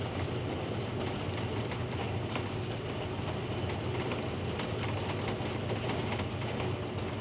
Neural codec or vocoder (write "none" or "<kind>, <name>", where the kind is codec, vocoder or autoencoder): none